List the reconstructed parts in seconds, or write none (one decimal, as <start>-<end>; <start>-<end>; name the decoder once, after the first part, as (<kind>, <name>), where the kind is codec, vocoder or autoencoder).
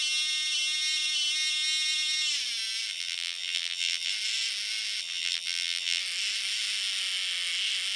2.9-4.1 (vocoder, BigVGAN v2); 5.0-6.0